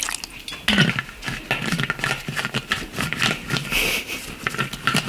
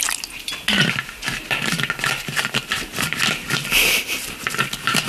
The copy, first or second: second